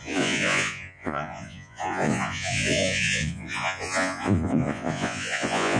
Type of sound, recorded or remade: remade